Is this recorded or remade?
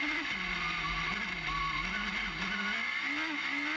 recorded